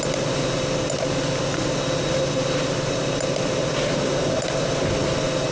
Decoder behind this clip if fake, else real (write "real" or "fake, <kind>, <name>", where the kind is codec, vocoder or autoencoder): real